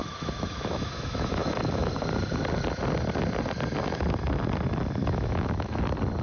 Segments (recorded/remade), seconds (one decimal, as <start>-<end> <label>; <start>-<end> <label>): 0.0-1.9 remade; 1.9-5.0 recorded; 5.0-5.8 remade; 5.8-6.2 recorded